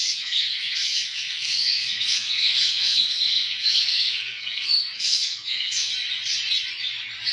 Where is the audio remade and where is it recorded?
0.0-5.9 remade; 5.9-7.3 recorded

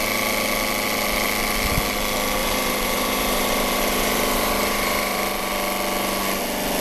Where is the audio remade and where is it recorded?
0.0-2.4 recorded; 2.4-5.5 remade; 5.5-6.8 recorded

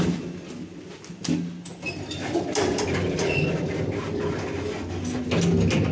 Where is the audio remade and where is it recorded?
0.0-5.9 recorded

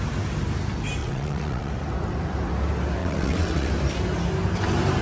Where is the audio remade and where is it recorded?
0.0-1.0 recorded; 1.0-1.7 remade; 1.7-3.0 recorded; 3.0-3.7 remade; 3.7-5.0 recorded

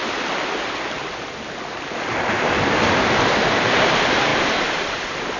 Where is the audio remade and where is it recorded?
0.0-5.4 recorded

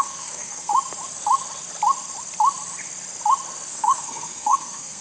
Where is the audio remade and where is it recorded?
0.0-0.7 remade; 0.7-3.7 recorded; 3.7-5.0 remade

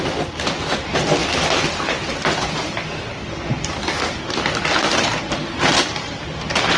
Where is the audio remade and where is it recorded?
0.0-1.2 remade; 1.2-2.5 recorded; 2.5-6.8 remade